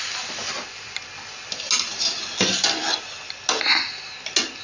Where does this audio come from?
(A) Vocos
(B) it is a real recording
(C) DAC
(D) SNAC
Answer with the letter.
B